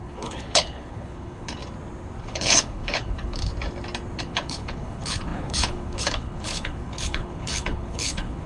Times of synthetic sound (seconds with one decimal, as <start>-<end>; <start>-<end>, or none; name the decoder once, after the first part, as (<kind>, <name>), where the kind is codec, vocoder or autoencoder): 0.0-1.6 (codec, HILCodec); 2.2-3.5; 4.2-8.5